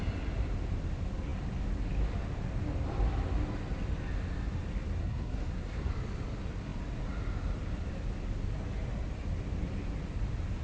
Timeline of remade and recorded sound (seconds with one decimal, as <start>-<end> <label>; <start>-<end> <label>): 0.0-5.0 recorded; 5.0-5.9 remade; 5.9-10.6 recorded